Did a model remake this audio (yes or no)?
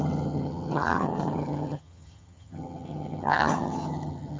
yes